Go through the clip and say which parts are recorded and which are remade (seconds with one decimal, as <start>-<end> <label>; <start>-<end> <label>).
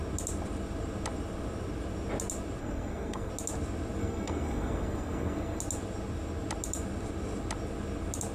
0.0-2.6 recorded; 2.6-3.3 remade; 3.3-4.0 recorded; 4.0-5.6 remade; 5.6-8.3 recorded